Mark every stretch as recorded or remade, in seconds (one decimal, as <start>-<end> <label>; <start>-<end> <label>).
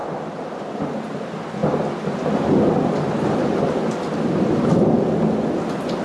0.0-6.0 recorded